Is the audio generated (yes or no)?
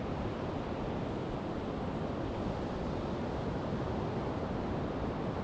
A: no